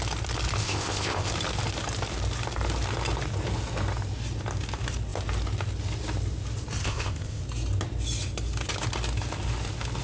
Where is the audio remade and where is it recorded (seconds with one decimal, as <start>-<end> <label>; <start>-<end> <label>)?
0.0-0.6 recorded; 0.6-1.3 remade; 1.3-6.8 recorded; 6.8-7.4 remade; 7.4-10.0 recorded